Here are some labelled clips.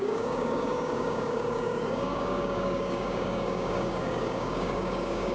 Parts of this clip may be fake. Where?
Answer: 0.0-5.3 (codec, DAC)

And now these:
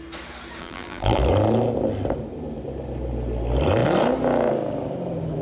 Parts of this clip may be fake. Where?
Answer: 0.6-1.2 (vocoder, BigVGAN v2)

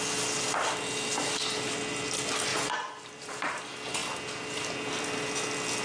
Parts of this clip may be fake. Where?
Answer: 2.5-3.6 (vocoder, BigVGAN v2)